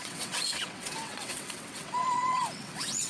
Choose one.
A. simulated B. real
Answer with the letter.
A